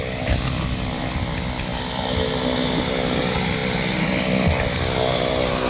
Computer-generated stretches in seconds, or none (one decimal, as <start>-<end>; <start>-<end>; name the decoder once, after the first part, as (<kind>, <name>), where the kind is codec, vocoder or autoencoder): none